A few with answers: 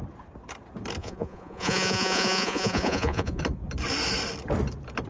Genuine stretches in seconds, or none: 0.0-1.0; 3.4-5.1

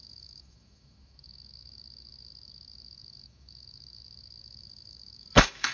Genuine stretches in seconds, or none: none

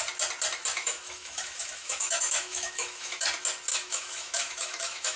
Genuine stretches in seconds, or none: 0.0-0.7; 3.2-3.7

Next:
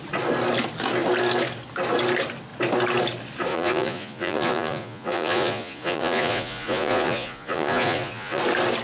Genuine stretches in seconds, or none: 0.0-3.5; 8.4-8.8

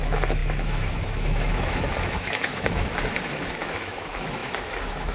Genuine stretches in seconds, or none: none

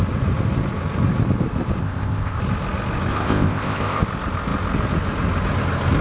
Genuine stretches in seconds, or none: 0.0-1.8; 2.4-3.1; 4.0-6.0

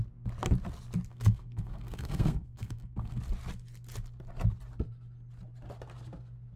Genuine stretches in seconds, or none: 0.0-1.1; 3.2-6.6